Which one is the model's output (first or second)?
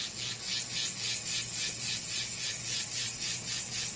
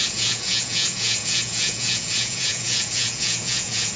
second